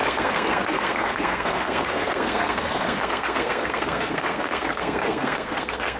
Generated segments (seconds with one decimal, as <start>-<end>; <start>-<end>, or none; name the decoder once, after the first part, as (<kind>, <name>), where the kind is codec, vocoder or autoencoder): 0.0-6.0 (codec, SNAC)